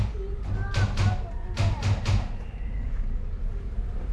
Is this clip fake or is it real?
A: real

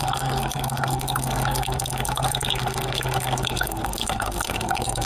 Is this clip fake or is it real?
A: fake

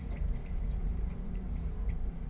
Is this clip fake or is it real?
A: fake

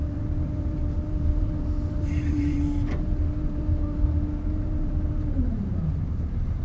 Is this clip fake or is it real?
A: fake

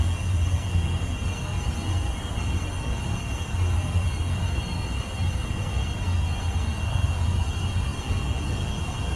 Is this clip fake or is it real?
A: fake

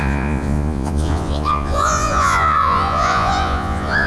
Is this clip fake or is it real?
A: fake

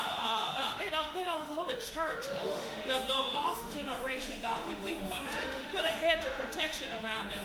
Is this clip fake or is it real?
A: fake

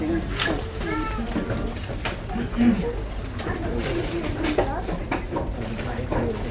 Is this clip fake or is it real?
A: real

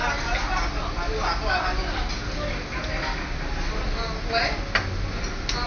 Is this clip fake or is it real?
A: real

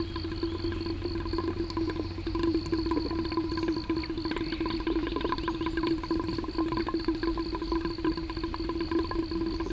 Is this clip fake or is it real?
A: real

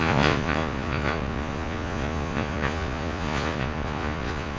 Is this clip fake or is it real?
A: fake